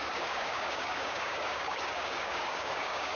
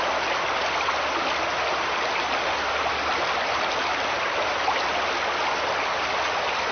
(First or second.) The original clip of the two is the second